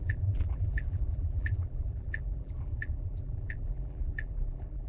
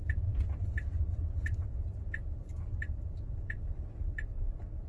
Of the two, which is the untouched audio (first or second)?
second